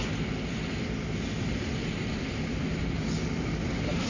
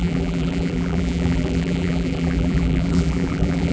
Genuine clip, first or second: first